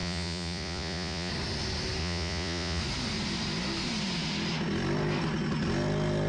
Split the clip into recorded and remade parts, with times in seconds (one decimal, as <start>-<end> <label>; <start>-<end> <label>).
0.0-1.3 remade; 1.3-2.0 recorded; 2.0-2.8 remade; 2.8-6.3 recorded